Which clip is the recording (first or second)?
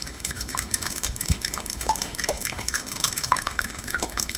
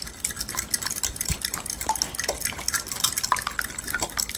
second